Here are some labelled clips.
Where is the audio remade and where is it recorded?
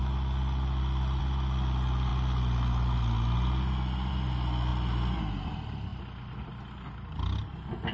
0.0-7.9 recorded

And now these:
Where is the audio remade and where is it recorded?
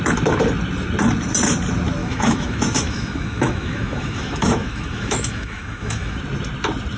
0.0-2.0 recorded; 2.0-6.2 remade; 6.2-7.0 recorded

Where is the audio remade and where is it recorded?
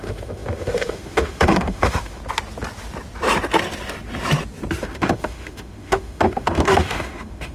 0.0-2.2 remade; 2.2-4.8 recorded; 4.8-7.5 remade